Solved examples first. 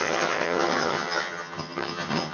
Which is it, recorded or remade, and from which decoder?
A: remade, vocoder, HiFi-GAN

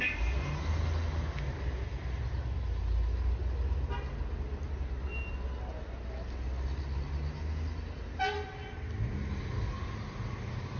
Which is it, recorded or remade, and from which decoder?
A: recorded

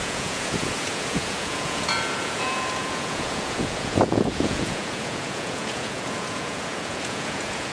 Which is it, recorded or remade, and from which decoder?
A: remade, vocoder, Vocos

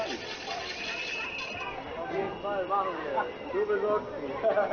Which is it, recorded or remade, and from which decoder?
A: recorded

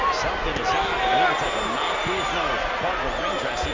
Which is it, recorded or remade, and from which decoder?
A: recorded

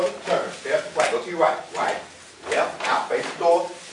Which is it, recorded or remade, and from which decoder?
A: recorded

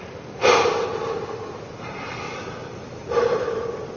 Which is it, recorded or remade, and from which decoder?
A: recorded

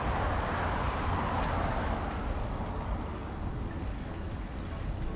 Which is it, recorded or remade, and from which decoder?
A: recorded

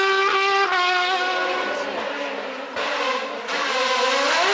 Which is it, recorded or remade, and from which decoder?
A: recorded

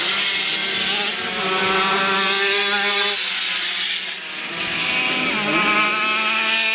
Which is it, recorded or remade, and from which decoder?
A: recorded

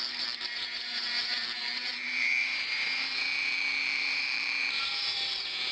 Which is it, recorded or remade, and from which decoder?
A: remade, vocoder, BigVGAN v2